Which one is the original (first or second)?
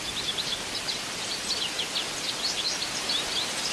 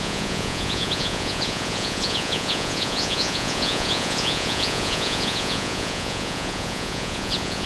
first